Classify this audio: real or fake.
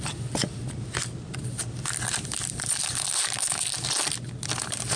real